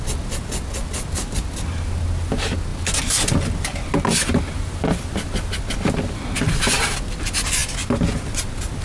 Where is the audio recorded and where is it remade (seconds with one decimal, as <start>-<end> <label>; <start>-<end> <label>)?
0.0-8.8 recorded